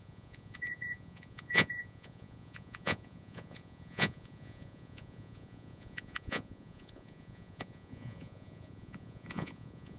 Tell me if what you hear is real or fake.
fake